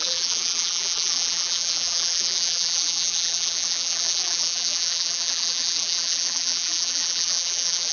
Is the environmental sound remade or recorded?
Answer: remade